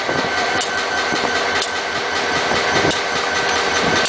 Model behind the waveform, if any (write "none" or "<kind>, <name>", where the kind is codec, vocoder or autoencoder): none